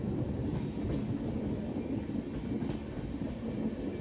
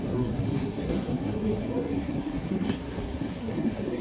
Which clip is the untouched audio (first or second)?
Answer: first